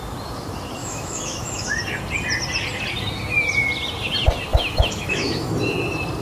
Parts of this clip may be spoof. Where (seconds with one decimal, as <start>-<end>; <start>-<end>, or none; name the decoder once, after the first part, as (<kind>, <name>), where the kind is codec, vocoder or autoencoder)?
0.8-1.7 (autoencoder, DAC-VAE); 4.5-5.5

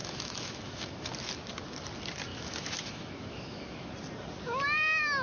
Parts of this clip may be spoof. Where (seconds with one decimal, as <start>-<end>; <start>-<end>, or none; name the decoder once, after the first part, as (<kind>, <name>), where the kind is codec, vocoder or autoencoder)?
0.0-1.1 (autoencoder, DAC-VAE); 2.3-3.9

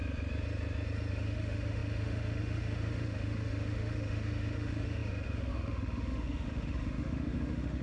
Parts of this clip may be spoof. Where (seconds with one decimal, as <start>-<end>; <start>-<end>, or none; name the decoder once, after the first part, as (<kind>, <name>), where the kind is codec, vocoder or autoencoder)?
1.1-7.8 (autoencoder, DAC-VAE)

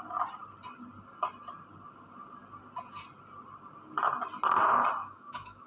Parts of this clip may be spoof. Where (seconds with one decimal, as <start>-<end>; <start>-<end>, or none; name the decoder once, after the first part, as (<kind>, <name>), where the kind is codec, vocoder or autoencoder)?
5.0-5.7 (autoencoder, DAC-VAE)

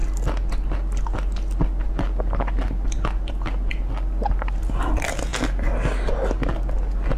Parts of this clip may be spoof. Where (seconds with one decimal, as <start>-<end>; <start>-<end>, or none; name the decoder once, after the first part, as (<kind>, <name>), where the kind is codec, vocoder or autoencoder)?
none

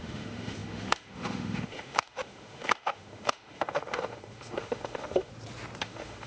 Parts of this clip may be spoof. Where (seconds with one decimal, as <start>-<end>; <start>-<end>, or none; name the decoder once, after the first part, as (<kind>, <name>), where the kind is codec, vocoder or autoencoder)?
0.0-5.3 (autoencoder, DAC-VAE); 5.8-6.3

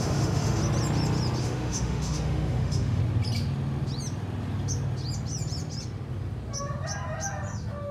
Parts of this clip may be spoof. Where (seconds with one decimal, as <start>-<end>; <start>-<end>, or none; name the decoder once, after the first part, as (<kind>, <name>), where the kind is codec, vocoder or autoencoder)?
0.0-0.6 (autoencoder, DAC-VAE); 1.4-3.0

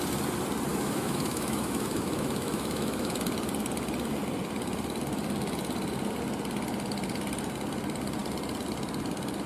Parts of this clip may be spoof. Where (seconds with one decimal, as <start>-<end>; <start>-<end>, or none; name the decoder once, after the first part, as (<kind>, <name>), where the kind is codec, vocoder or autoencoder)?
0.7-3.1 (autoencoder, DAC-VAE)